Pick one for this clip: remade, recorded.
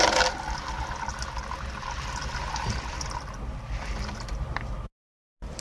recorded